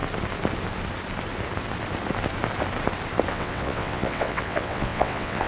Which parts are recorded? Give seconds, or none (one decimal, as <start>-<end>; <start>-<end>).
0.0-3.3